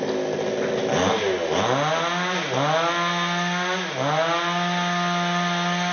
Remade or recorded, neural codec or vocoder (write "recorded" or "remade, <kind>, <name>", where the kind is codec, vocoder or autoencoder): recorded